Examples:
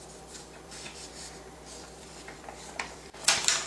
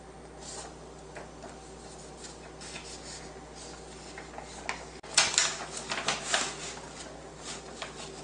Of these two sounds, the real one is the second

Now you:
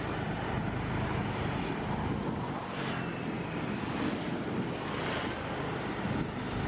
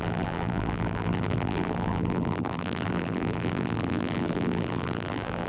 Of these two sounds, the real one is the first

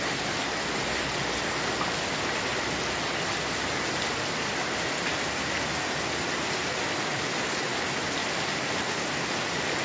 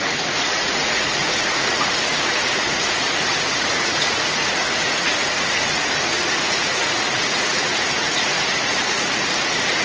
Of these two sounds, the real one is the first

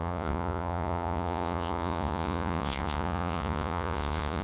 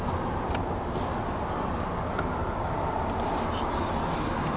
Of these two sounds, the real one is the second